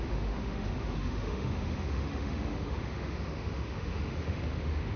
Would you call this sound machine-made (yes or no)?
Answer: yes